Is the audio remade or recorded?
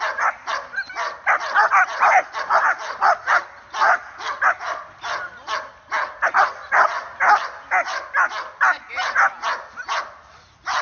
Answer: recorded